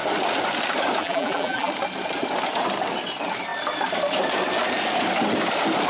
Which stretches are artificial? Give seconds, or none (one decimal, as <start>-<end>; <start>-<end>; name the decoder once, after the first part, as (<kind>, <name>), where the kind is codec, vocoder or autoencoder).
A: 1.0-1.7 (vocoder, BigVGAN v2)